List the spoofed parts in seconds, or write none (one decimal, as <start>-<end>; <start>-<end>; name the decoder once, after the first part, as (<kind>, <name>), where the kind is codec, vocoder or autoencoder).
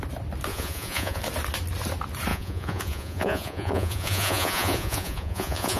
0.5-1.2 (vocoder, Vocos); 2.3-5.8